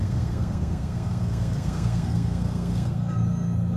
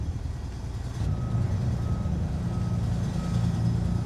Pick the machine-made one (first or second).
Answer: first